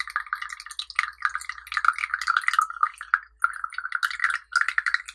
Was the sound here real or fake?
real